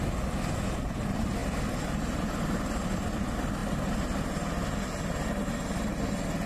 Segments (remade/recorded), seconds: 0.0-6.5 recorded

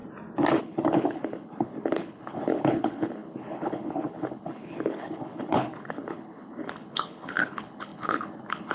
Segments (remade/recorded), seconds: 0.0-0.6 recorded; 0.6-8.7 remade

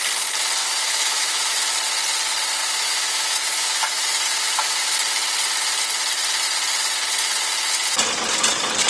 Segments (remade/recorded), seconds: 0.0-0.6 recorded; 0.6-1.7 remade; 1.7-2.6 recorded; 2.6-4.9 remade; 4.9-8.9 recorded

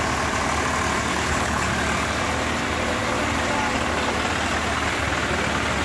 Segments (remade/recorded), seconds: 0.0-1.1 recorded; 1.1-1.7 remade; 1.7-5.8 recorded

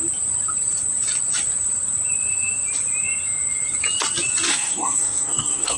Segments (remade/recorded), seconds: 0.0-4.5 recorded; 4.5-5.8 remade

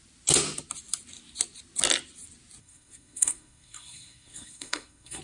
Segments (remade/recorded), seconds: 0.0-2.6 recorded; 2.6-5.2 remade